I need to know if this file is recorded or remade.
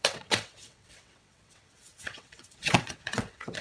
remade